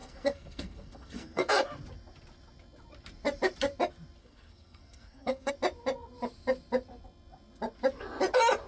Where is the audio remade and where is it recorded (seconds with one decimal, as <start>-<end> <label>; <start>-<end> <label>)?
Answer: 0.0-1.5 remade; 1.5-4.2 recorded; 4.2-5.5 remade; 5.5-8.7 recorded